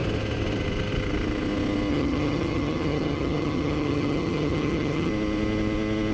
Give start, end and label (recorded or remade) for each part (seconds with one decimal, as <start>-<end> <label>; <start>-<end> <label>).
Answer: 0.0-1.9 recorded; 1.9-5.1 remade; 5.1-6.1 recorded